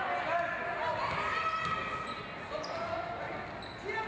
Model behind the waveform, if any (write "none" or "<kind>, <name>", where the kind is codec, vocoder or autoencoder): none